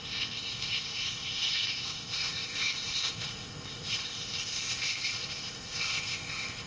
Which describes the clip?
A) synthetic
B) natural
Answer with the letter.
A